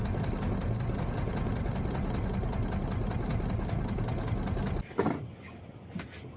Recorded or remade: recorded